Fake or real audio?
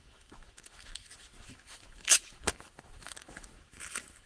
fake